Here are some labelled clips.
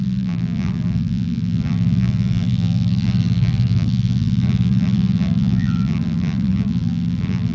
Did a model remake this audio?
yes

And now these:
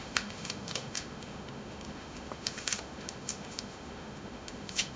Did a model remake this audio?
yes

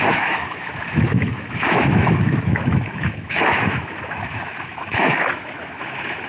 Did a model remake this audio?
yes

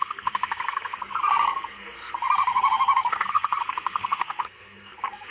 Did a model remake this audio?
yes